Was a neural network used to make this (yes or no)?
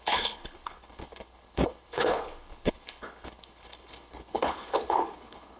yes